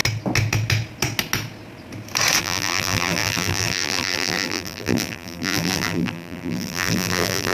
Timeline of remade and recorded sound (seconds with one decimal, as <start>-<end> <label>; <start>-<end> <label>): 0.0-2.4 recorded; 2.4-7.5 remade